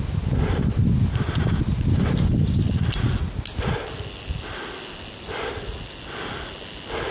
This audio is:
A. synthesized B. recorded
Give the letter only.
B